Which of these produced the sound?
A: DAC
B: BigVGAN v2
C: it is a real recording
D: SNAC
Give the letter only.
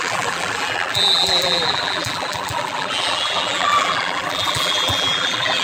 B